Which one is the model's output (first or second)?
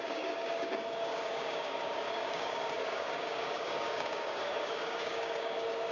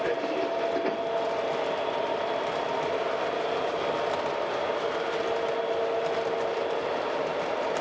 first